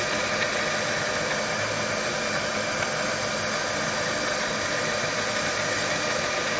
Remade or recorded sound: recorded